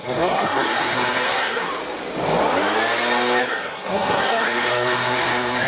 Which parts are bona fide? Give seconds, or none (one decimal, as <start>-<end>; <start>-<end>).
1.7-3.4